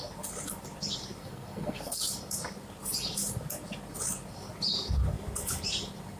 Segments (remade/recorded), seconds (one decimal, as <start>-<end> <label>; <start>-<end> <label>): 0.0-1.2 recorded; 1.2-2.0 remade; 2.0-6.2 recorded